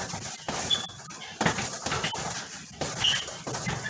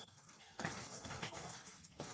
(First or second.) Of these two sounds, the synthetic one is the second